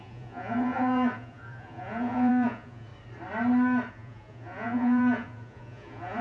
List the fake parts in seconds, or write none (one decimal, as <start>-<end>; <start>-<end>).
0.0-2.9; 3.9-6.2